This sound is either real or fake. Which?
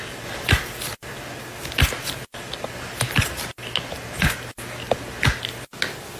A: real